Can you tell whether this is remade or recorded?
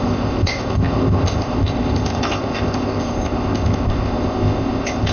remade